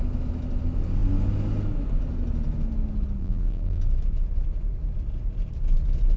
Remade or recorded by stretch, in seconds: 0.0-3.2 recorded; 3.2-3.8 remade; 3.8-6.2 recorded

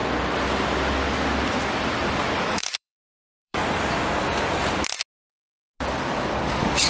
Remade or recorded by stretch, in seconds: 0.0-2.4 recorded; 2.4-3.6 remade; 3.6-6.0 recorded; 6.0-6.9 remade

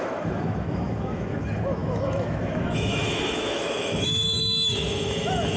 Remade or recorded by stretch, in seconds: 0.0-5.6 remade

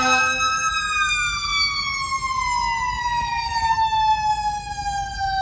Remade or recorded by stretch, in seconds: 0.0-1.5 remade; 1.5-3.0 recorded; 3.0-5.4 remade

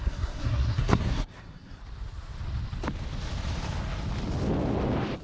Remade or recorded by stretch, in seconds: 0.0-1.8 remade; 1.8-5.2 recorded

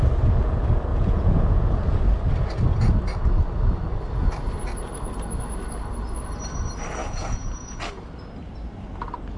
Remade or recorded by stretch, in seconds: 0.0-0.9 recorded; 0.9-2.0 remade; 2.0-7.0 recorded; 7.0-7.8 remade; 7.8-9.4 recorded

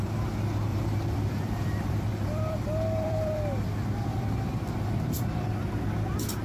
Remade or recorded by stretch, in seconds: 0.0-0.7 recorded; 0.7-3.7 remade; 3.7-6.4 recorded